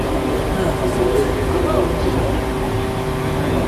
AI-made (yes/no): no